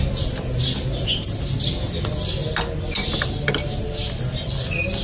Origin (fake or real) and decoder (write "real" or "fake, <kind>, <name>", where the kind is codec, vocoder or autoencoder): real